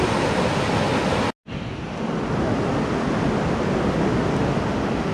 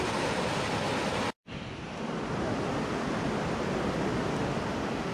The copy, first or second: second